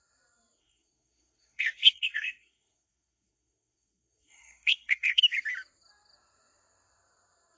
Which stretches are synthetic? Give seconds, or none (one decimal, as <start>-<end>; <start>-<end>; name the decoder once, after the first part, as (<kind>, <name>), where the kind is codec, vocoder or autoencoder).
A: 0.6-5.2 (codec, SNAC)